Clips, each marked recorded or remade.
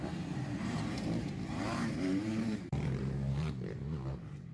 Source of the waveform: remade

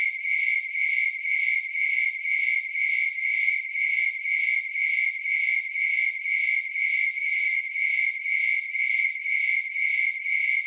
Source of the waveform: recorded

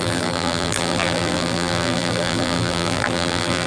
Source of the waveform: remade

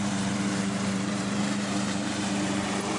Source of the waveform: remade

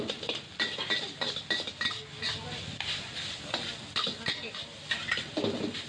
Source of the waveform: recorded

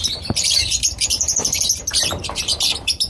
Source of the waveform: remade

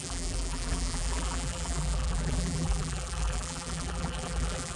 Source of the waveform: remade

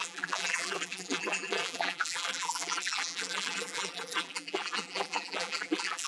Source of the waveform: remade